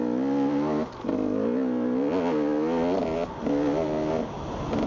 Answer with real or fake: real